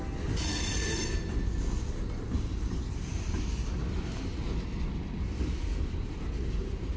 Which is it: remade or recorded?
recorded